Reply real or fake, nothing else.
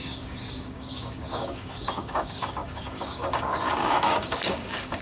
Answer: fake